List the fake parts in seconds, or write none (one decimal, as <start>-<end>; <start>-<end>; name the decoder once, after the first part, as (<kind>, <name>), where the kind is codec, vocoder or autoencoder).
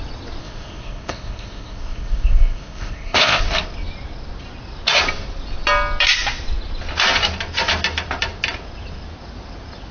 0.4-3.4 (codec, ZipCodec)